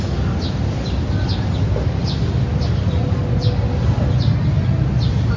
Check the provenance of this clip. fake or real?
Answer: real